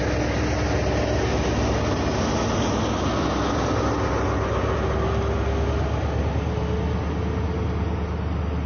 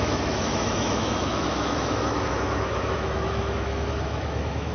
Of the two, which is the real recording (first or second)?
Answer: first